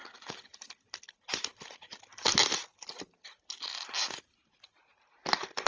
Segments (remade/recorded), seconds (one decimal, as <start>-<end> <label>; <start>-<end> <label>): 0.0-5.7 recorded